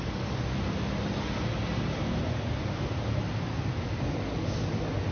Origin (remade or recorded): recorded